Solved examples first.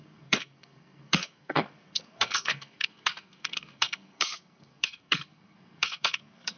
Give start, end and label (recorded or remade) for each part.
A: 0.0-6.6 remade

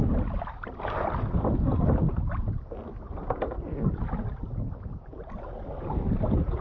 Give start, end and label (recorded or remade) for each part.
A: 0.0-6.6 recorded

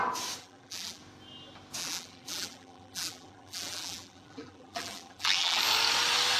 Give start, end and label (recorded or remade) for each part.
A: 0.0-0.4 recorded; 0.4-1.0 remade; 1.0-1.8 recorded; 1.8-5.6 remade; 5.6-6.4 recorded

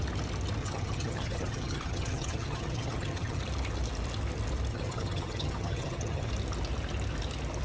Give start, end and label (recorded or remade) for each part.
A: 0.0-0.6 recorded; 0.6-3.4 remade; 3.4-4.7 recorded; 4.7-6.3 remade; 6.3-7.6 recorded

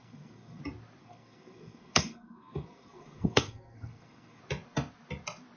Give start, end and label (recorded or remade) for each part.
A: 0.0-0.6 remade; 0.6-1.0 recorded; 1.0-4.4 remade; 4.4-5.6 recorded

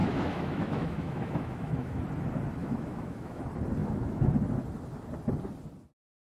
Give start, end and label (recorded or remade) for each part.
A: 0.0-2.0 remade; 2.0-2.6 recorded; 2.6-3.4 remade; 3.4-3.8 recorded; 3.8-4.3 remade; 4.3-6.3 recorded

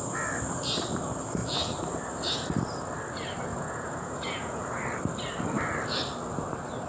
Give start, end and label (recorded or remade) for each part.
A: 0.0-3.5 recorded; 3.5-4.8 remade; 4.8-6.9 recorded

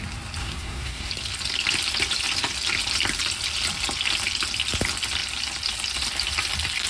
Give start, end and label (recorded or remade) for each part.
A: 0.0-0.4 recorded; 0.4-1.1 remade; 1.1-6.9 recorded